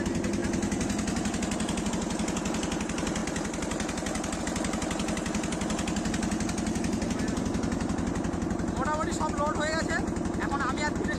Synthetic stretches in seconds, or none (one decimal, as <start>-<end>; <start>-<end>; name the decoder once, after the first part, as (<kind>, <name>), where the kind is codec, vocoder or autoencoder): none